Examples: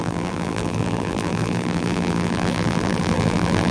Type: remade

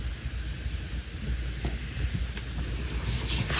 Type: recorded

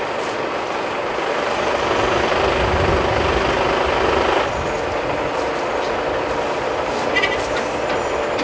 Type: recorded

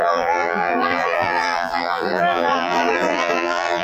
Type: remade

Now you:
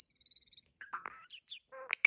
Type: recorded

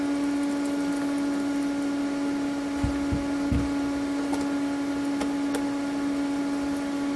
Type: recorded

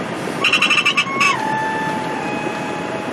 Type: recorded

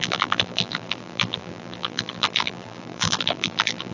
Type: remade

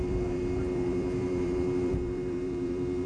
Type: remade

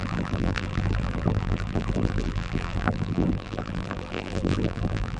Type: remade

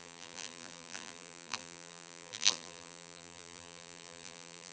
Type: remade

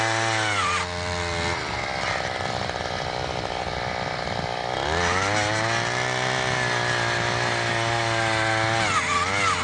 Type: recorded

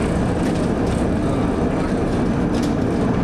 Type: recorded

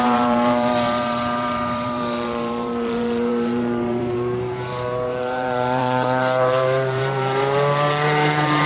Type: remade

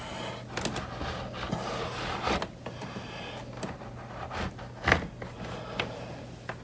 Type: recorded